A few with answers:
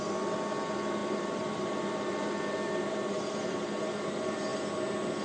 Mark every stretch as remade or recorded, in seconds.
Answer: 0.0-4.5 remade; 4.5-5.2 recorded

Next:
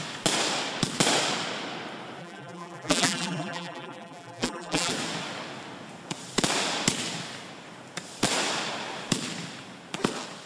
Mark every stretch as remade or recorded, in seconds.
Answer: 0.0-2.2 recorded; 2.2-4.9 remade; 4.9-10.5 recorded

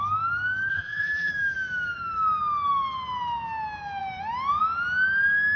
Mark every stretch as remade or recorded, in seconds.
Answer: 0.0-0.7 recorded; 0.7-1.3 remade; 1.3-5.6 recorded